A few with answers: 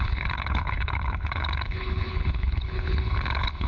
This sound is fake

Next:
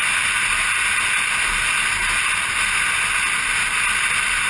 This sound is real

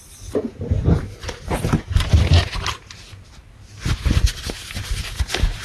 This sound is real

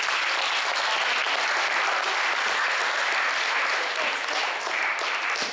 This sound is real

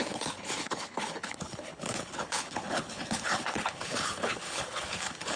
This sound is fake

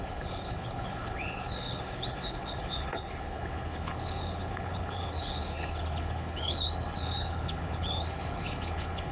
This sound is fake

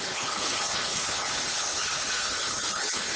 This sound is fake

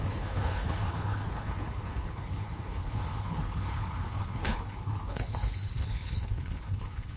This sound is fake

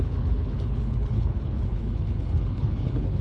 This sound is fake